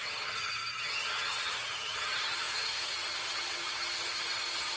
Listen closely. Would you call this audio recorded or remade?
remade